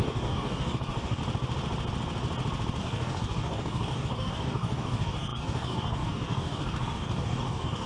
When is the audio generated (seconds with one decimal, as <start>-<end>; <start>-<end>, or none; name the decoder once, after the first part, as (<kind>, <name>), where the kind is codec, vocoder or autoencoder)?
0.0-1.2 (codec, DAC); 2.8-7.9

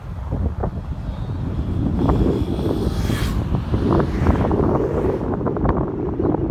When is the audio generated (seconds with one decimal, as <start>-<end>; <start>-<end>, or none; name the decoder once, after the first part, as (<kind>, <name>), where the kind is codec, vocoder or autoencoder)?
none